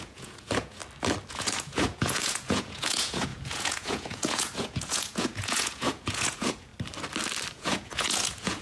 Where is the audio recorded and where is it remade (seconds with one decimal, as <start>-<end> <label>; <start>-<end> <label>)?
0.0-0.8 remade; 0.8-1.3 recorded; 1.3-6.7 remade; 6.7-7.5 recorded; 7.5-8.6 remade